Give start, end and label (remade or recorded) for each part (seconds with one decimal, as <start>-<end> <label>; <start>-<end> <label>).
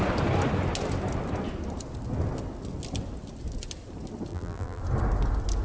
0.0-4.3 recorded; 4.3-4.8 remade; 4.8-5.6 recorded